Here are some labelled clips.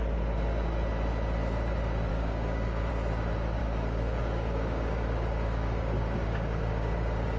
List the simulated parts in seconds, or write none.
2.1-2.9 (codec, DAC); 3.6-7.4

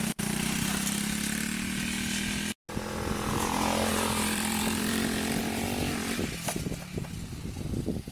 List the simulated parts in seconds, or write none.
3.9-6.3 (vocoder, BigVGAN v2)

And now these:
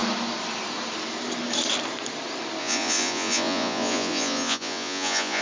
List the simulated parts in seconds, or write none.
2.6-5.4 (vocoder, Vocos)

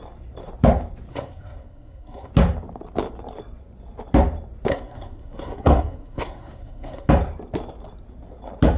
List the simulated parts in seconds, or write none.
1.1-2.3 (codec, SNAC); 4.7-7.1

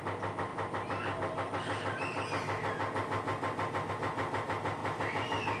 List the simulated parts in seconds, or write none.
none

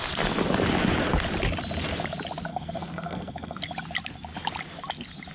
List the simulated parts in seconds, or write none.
2.5-3.6 (codec, SNAC)

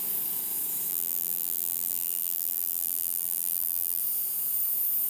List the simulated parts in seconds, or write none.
0.9-4.0 (vocoder, BigVGAN v2)